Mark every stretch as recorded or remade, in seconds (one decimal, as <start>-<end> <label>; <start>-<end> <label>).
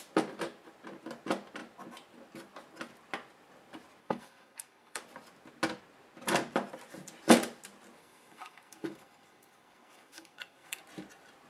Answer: 0.0-4.0 recorded; 4.0-5.0 remade; 5.0-8.0 recorded; 8.0-10.8 remade; 10.8-11.5 recorded